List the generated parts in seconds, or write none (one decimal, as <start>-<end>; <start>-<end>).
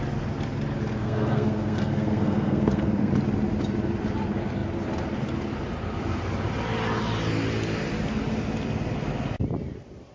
1.0-3.1